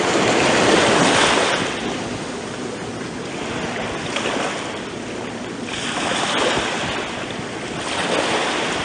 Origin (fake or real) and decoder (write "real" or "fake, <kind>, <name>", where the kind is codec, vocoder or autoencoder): real